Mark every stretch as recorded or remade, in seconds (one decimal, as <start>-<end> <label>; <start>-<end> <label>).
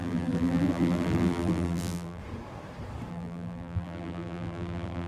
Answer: 0.0-2.2 remade; 2.2-3.1 recorded; 3.1-5.1 remade